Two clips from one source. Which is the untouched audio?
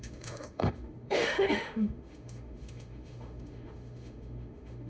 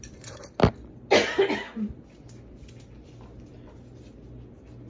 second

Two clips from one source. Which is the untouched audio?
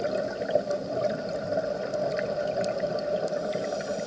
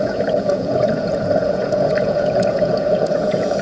first